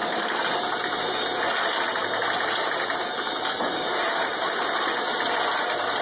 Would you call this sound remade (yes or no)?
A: no